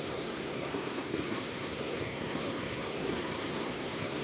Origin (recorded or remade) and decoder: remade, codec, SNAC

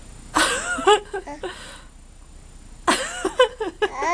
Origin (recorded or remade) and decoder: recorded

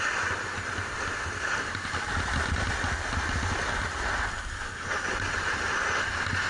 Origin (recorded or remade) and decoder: recorded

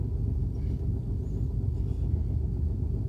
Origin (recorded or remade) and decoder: recorded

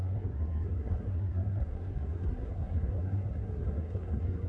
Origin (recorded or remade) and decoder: remade, codec, SNAC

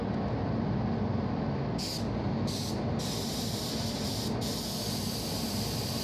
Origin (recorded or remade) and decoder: recorded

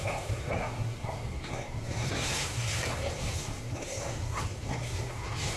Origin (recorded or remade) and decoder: remade, codec, SNAC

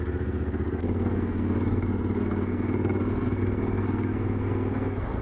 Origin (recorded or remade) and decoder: remade, codec, SNAC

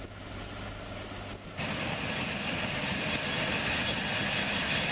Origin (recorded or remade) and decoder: recorded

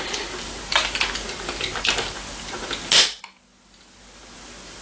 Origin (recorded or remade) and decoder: recorded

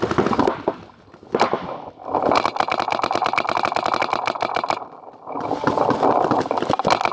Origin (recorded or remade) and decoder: recorded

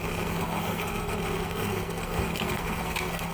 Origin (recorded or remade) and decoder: remade, codec, SNAC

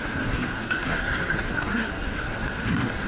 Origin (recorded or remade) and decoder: remade, codec, SNAC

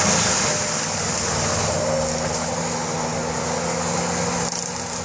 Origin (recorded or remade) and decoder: recorded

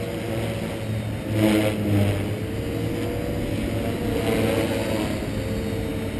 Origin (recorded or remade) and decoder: recorded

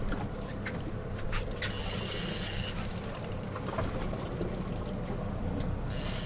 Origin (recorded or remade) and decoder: recorded